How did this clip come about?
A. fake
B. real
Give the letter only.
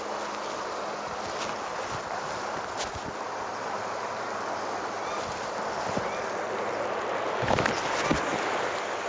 B